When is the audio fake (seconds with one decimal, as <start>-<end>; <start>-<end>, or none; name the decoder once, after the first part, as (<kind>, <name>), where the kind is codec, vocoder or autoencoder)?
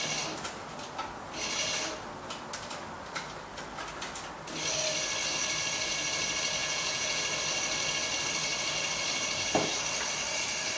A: 6.6-7.2 (vocoder, Vocos)